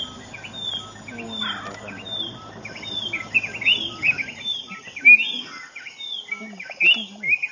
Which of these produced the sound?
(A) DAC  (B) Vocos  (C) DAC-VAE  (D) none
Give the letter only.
D